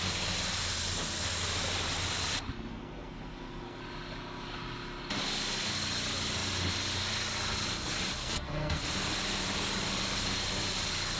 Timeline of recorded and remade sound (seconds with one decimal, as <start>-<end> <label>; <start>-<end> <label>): 0.0-2.7 recorded; 2.7-3.8 remade; 3.8-8.2 recorded; 8.2-8.8 remade; 8.8-11.2 recorded